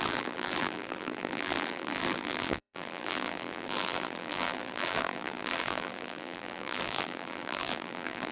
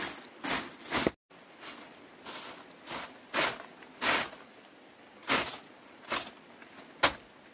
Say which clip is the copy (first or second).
first